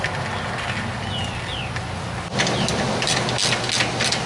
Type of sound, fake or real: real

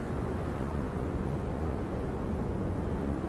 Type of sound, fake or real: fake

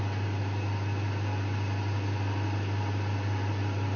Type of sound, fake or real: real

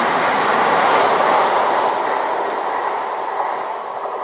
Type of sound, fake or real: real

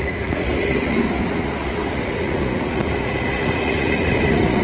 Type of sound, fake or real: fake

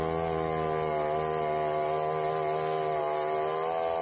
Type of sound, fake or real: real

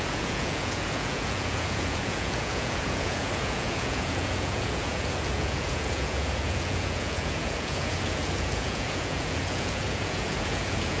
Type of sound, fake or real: fake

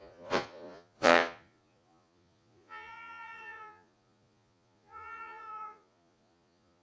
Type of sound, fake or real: fake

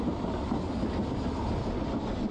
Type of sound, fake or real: real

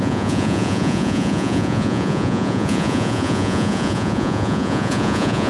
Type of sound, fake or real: fake